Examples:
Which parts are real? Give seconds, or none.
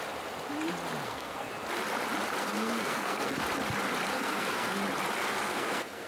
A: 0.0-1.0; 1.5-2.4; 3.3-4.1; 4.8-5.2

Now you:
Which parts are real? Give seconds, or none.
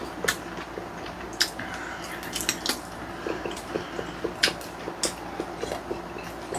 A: 0.0-6.6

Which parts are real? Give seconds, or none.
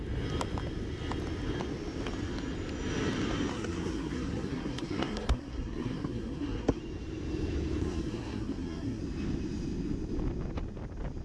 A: 0.0-3.5; 6.8-7.8; 9.0-11.2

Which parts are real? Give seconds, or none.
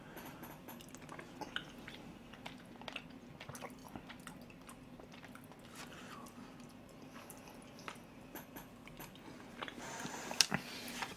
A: 0.0-11.2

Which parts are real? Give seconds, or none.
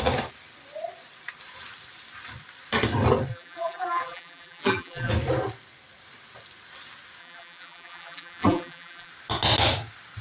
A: 0.0-3.3; 5.1-7.2; 9.1-10.2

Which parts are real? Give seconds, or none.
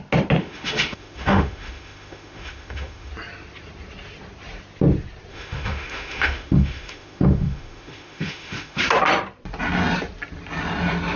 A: 0.0-0.4; 3.1-5.3; 8.8-11.2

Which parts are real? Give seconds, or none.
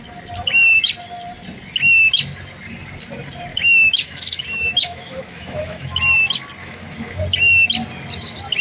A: 0.0-3.5; 6.0-6.6; 7.2-8.6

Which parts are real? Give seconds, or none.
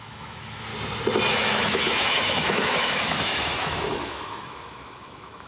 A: 0.7-1.3